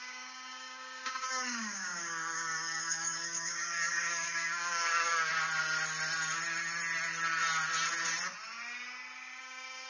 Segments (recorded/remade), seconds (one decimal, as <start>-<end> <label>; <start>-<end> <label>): 0.0-5.3 remade; 5.3-9.4 recorded; 9.4-9.9 remade

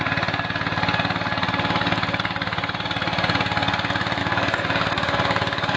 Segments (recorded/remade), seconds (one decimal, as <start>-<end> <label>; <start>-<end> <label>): 0.0-4.2 recorded; 4.2-5.8 remade